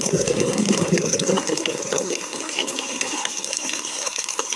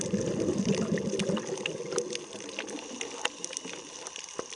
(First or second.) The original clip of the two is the second